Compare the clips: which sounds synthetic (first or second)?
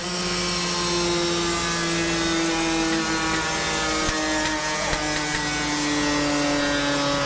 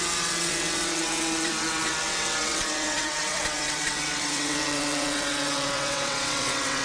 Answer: second